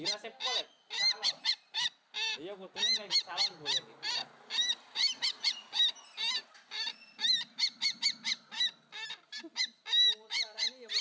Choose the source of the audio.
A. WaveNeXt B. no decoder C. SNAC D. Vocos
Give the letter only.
B